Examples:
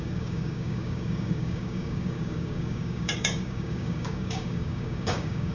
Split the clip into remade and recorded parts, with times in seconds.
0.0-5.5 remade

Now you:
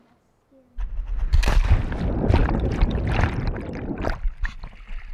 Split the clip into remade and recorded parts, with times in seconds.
0.0-5.1 recorded

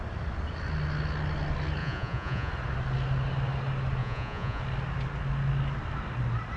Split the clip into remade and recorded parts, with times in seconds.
0.0-1.8 recorded; 1.8-2.5 remade; 2.5-4.0 recorded; 4.0-4.6 remade; 4.6-6.6 recorded

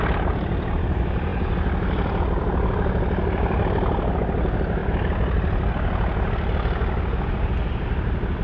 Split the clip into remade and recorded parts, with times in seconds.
0.0-8.4 recorded